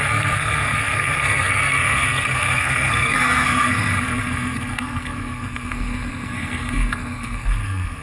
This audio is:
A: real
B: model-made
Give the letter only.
B